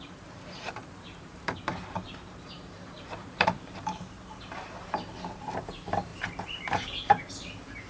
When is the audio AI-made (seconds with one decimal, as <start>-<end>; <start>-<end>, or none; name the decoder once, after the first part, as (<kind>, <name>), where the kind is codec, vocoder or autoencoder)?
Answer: 0.0-7.9 (vocoder, BigVGAN v2)